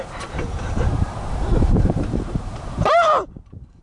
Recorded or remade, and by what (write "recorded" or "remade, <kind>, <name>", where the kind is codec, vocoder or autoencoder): remade, vocoder, BigVGAN v2